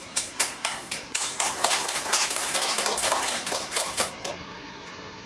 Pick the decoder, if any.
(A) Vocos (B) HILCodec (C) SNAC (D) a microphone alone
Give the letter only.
C